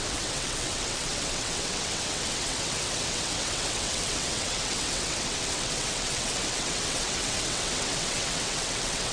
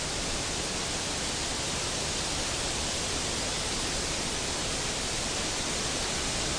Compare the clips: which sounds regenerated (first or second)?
first